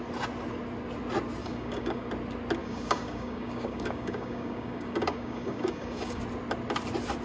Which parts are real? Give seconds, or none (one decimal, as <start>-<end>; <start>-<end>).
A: 0.0-1.4; 2.1-2.6; 6.2-7.2